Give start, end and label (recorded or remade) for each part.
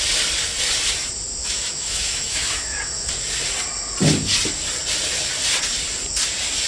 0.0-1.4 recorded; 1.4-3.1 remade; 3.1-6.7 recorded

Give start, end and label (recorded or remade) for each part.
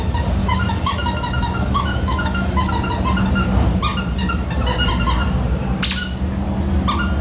0.0-0.4 recorded; 0.4-2.7 remade; 2.7-7.2 recorded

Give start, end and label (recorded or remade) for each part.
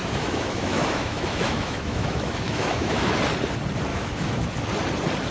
0.0-3.2 remade; 3.2-3.9 recorded; 3.9-4.5 remade; 4.5-5.3 recorded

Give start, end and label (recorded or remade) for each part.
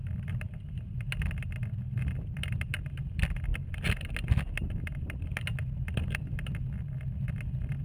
0.0-7.8 recorded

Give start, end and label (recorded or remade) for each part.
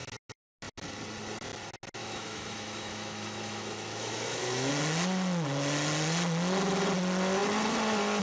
0.0-2.0 recorded; 2.0-4.7 remade; 4.7-8.2 recorded